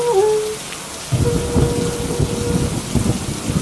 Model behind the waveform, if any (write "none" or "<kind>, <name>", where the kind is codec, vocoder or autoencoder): none